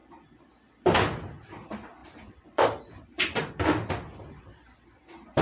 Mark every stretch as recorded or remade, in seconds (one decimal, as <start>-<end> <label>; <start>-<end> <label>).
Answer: 0.0-1.2 remade; 1.2-2.0 recorded; 2.0-5.4 remade